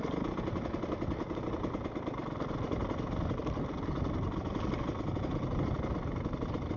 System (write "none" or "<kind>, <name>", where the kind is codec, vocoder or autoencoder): none